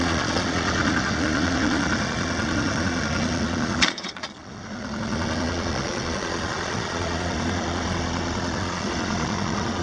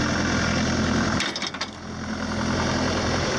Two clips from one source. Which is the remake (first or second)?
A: first